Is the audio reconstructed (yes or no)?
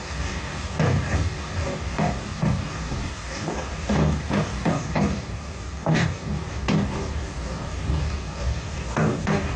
yes